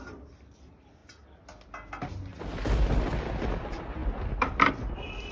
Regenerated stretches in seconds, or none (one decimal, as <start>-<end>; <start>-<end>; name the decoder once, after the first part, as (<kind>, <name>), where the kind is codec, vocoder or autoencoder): none